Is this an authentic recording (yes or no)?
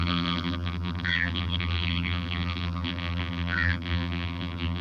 no